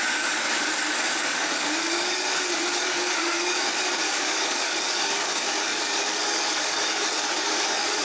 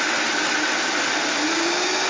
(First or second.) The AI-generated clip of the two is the first